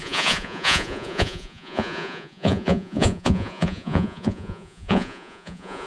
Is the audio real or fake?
fake